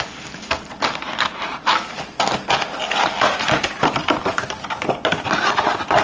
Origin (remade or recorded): recorded